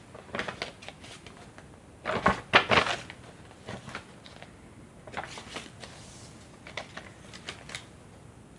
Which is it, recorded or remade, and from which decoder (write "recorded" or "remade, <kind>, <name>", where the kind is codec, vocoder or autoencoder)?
recorded